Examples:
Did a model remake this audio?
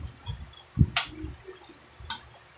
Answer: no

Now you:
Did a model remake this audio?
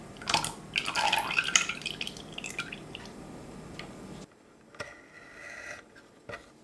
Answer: no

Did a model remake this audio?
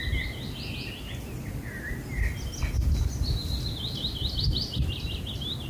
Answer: no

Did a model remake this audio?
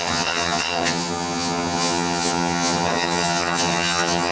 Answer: yes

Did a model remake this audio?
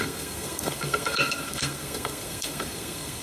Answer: yes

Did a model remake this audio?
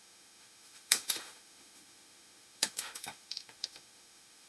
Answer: yes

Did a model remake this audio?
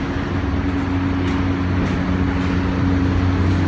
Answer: no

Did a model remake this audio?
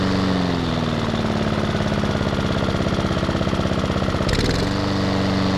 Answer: no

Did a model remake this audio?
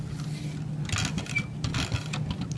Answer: no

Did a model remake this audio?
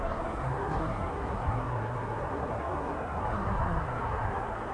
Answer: yes